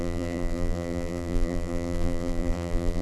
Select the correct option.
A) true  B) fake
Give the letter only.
B